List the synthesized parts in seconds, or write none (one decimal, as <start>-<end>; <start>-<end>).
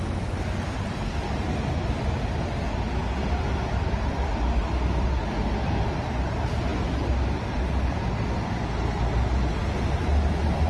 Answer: none